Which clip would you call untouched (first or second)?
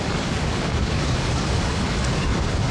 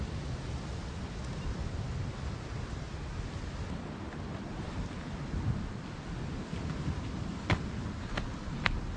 second